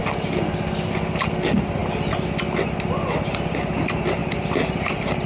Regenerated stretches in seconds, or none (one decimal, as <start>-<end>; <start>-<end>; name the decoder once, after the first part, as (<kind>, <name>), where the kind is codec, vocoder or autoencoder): 4.2-5.3 (vocoder, BigVGAN v2)